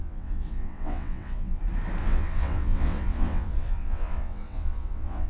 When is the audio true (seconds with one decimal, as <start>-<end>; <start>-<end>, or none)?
1.6-2.0